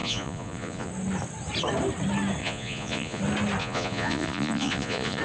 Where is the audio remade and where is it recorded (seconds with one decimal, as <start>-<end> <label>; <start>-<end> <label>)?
0.0-0.9 remade; 0.9-2.4 recorded; 2.4-3.2 remade; 3.2-3.6 recorded; 3.6-5.2 remade